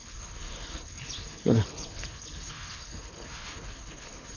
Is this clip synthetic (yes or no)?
yes